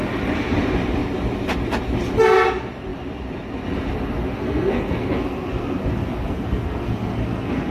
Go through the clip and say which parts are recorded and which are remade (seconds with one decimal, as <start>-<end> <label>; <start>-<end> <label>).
0.0-4.3 recorded; 4.3-7.7 remade